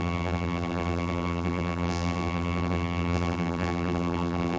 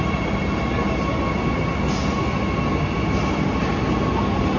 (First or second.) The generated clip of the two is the first